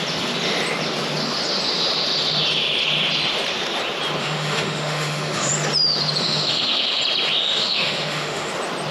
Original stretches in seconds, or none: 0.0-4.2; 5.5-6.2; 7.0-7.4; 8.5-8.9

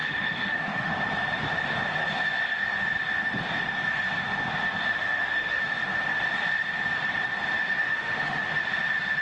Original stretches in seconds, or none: 0.9-4.9; 5.6-7.8; 8.4-9.2

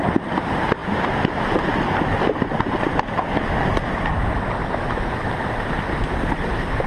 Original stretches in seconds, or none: 0.0-4.6; 5.3-6.9

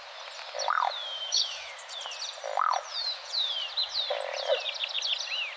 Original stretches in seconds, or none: 0.0-1.0; 1.7-5.6

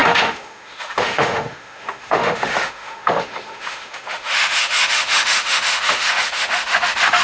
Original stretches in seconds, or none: none

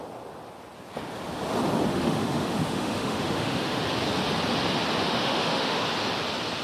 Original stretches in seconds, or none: 0.0-1.9; 3.8-5.0; 5.8-6.6